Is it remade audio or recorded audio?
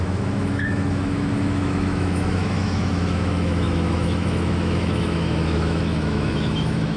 remade